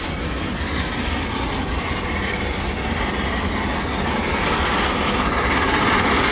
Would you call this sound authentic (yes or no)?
yes